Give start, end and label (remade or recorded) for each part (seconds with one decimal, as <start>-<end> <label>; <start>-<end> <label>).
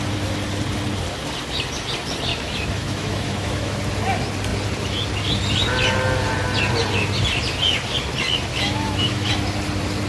0.0-2.3 recorded; 2.3-3.8 remade; 3.8-8.5 recorded; 8.5-9.3 remade; 9.3-10.1 recorded